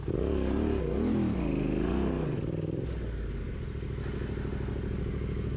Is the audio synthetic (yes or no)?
no